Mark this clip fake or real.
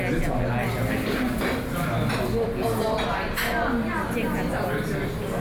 real